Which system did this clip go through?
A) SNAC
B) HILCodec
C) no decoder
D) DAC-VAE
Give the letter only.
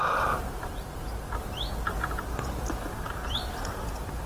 C